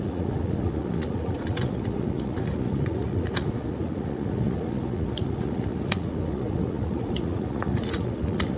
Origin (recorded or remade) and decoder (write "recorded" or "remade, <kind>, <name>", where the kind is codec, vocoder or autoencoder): remade, vocoder, Vocos